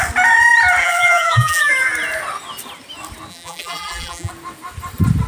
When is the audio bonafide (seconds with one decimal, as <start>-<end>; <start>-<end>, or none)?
0.0-0.8; 1.7-3.3; 4.3-5.3